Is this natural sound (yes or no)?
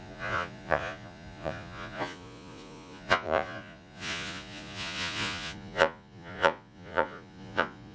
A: no